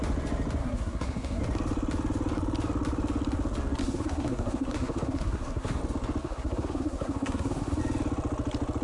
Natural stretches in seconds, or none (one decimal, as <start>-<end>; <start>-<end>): 0.0-0.6; 1.4-3.8; 5.8-6.2; 7.8-8.8